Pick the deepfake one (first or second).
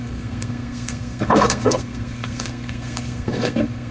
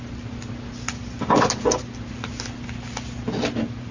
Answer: first